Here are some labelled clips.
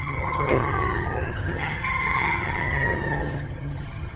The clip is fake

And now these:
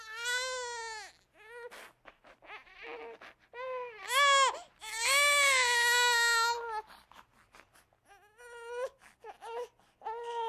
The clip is real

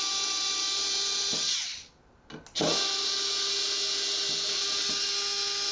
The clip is real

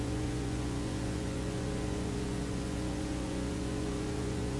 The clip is fake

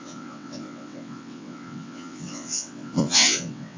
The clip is fake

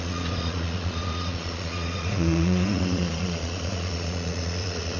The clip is fake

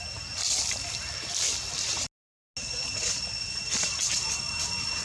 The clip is real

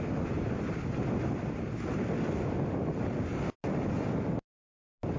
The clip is real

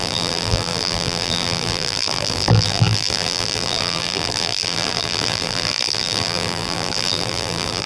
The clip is fake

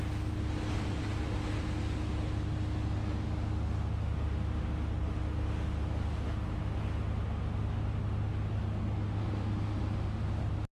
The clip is real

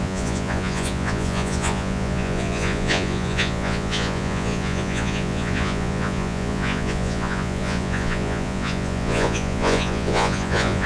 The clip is fake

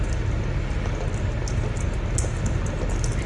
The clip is real